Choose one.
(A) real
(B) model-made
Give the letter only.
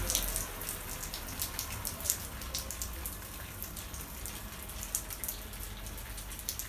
A